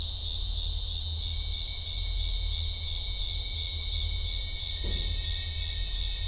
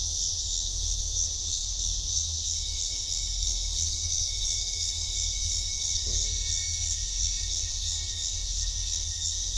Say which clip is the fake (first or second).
second